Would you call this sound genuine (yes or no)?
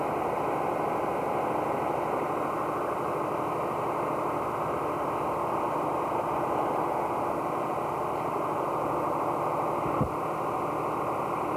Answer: yes